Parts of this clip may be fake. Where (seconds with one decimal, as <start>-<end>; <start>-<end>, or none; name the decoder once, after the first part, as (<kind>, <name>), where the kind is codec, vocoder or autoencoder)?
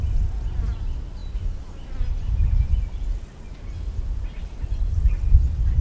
none